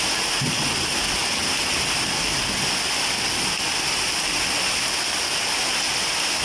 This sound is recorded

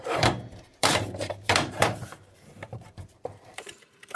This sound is remade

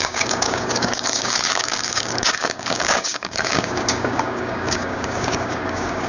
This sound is remade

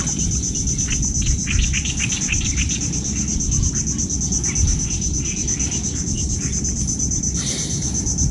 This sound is recorded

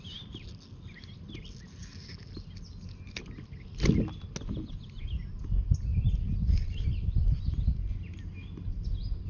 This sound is recorded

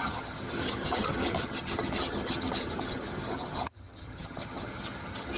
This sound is remade